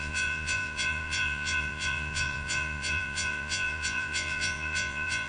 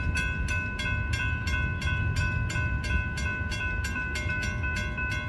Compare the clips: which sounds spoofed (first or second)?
first